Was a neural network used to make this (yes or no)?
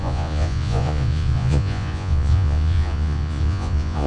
yes